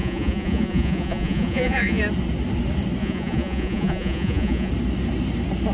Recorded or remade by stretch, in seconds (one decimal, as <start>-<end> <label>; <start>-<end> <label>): 0.0-2.0 remade; 2.0-3.0 recorded; 3.0-4.7 remade; 4.7-5.7 recorded